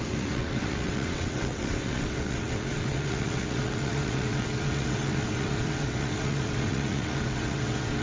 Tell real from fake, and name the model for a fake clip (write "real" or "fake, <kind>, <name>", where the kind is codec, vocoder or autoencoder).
fake, vocoder, WaveNeXt